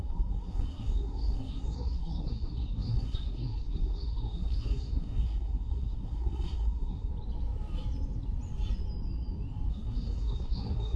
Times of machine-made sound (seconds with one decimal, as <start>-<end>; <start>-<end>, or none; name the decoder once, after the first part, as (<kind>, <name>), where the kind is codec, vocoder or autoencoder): 0.0-7.1 (codec, SNAC); 9.7-11.0